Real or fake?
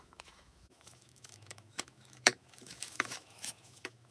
fake